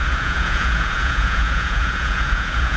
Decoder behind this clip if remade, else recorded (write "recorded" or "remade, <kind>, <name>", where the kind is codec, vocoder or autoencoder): remade, vocoder, Vocos